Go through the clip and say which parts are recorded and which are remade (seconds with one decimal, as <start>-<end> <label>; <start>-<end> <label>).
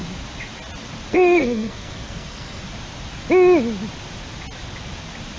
0.0-1.1 recorded; 1.1-2.6 remade; 2.6-5.4 recorded